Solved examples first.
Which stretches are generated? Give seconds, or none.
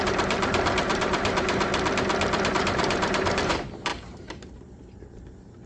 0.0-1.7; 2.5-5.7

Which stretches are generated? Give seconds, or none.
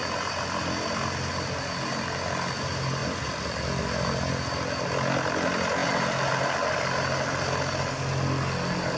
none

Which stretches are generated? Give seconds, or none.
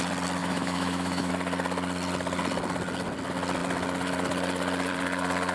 0.4-1.3